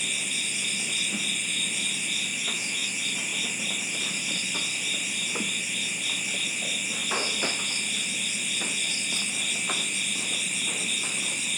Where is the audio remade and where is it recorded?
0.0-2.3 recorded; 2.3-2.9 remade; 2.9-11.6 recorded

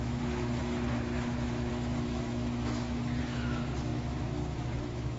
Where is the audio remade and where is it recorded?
0.0-5.2 remade

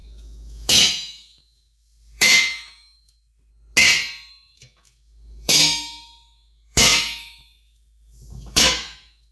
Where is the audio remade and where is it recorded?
0.0-3.5 remade; 3.5-4.3 recorded; 4.3-9.3 remade